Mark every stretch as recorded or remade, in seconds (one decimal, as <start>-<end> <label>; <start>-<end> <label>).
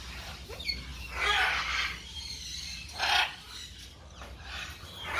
0.0-0.9 remade; 0.9-4.0 recorded; 4.0-5.2 remade